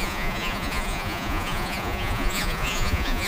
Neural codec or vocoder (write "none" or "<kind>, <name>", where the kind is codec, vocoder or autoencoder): vocoder, Vocos